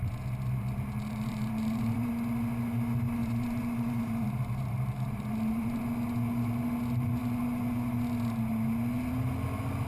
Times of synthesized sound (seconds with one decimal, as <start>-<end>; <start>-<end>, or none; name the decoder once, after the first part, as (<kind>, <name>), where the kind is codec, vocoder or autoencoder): 1.1-2.1 (vocoder, BigVGAN v2); 3.2-5.8